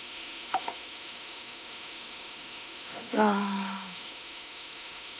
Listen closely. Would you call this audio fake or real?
fake